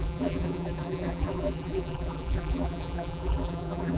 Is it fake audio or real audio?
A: fake